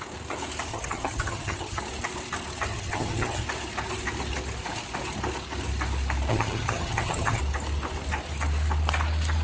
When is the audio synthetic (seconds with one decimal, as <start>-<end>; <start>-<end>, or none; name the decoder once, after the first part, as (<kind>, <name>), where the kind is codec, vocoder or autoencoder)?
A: 0.7-1.8 (vocoder, HiFi-GAN); 2.7-3.4; 6.3-7.4